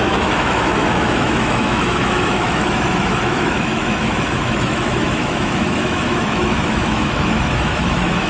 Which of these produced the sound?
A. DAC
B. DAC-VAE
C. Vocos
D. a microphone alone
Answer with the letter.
B